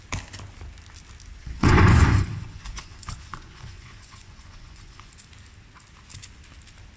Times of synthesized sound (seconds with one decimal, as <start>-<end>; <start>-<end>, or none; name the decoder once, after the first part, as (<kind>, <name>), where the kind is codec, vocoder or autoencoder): 1.4-5.1 (vocoder, Vocos)